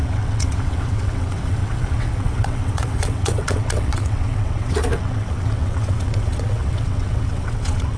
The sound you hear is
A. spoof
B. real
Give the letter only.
A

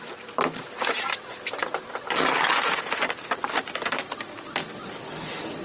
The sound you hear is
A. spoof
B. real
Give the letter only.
B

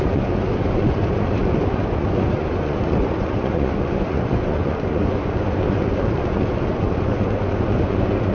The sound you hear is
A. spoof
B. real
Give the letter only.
A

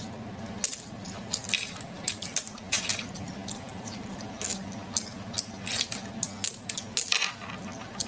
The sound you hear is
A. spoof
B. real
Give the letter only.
B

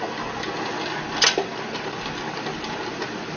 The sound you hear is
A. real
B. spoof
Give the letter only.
A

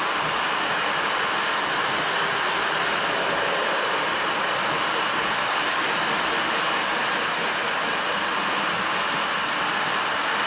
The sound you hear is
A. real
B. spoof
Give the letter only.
A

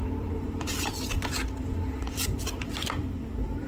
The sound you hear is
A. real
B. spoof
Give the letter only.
B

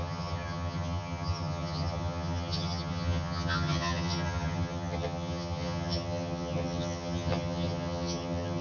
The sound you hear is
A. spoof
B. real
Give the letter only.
A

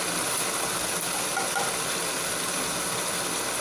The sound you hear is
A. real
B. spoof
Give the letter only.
A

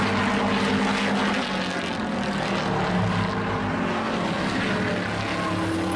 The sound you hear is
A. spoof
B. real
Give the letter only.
B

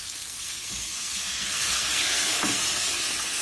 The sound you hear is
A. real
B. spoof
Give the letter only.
B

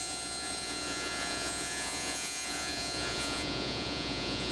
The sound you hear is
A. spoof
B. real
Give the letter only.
A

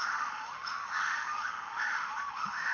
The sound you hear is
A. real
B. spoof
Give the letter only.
B